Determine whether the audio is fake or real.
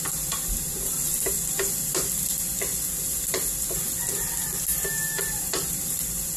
fake